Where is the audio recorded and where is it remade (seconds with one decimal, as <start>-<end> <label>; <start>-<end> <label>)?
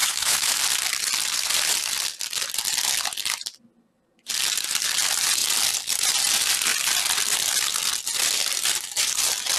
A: 0.0-0.6 remade; 0.6-9.6 recorded